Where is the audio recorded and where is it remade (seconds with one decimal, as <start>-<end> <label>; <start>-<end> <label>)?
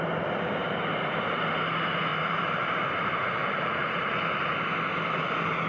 0.0-0.6 recorded; 0.6-1.2 remade; 1.2-2.1 recorded; 2.1-4.5 remade; 4.5-5.7 recorded